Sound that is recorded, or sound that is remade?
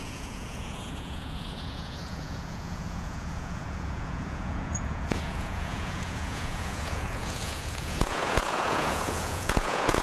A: remade